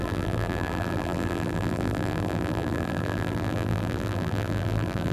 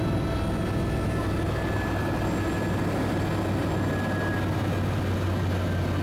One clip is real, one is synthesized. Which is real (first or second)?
second